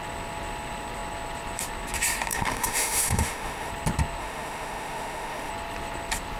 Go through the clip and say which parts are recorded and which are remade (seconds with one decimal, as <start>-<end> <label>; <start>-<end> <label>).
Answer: 0.0-2.3 recorded; 2.3-3.7 remade; 3.7-4.2 recorded; 4.2-5.5 remade; 5.5-6.4 recorded